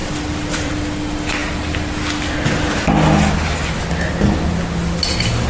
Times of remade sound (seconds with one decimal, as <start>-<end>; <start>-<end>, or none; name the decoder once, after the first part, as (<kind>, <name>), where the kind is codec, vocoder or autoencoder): 0.0-0.7 (vocoder, BigVGAN v2)